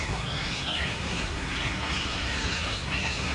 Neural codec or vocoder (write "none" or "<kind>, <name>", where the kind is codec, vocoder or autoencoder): codec, SNAC